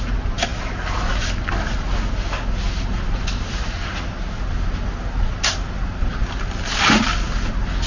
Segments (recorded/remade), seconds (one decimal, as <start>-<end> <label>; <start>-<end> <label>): 0.0-7.9 recorded